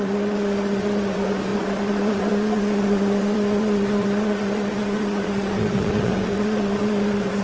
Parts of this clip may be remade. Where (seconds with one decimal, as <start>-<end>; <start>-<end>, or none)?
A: 0.0-7.4